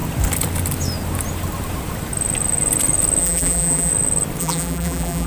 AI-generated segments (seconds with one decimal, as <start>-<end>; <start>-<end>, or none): 3.2-3.9; 4.4-5.3